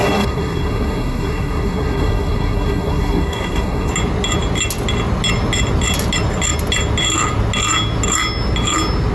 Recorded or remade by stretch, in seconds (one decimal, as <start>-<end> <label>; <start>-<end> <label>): 0.0-3.9 remade; 3.9-9.1 recorded